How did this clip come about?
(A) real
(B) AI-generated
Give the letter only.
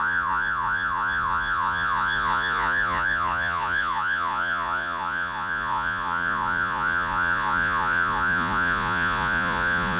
B